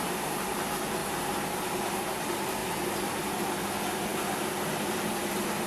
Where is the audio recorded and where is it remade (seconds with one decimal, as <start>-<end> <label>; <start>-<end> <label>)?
0.0-1.0 recorded; 1.0-1.7 remade; 1.7-2.6 recorded; 2.6-3.2 remade; 3.2-4.1 recorded; 4.1-5.1 remade; 5.1-5.7 recorded